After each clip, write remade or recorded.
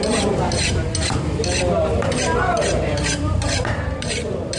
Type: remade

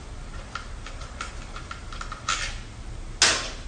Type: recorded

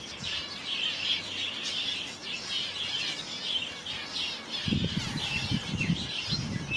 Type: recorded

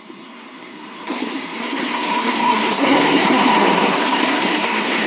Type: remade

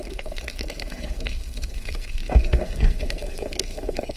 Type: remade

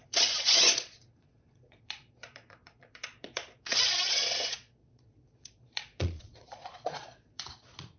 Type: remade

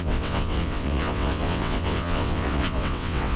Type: remade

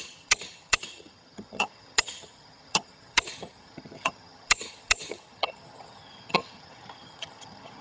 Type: remade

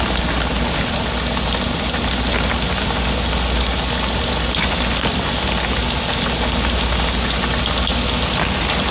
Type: recorded